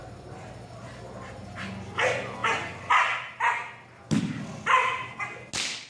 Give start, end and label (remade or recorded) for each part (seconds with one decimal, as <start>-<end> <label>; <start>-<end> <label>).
0.0-5.9 recorded